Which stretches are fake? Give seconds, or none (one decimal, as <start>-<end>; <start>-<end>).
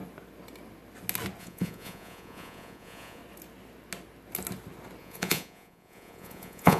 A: 1.4-3.2; 5.0-6.8